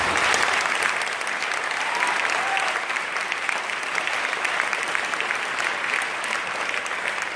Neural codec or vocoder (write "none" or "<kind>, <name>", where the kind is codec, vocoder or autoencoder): none